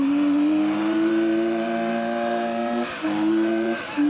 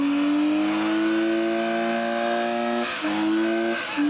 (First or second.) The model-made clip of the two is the first